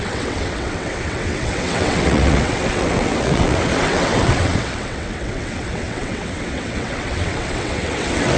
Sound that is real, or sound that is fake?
fake